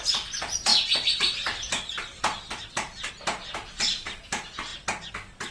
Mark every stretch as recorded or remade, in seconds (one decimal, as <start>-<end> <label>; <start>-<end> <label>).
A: 0.0-0.7 recorded; 0.7-3.1 remade; 3.1-5.5 recorded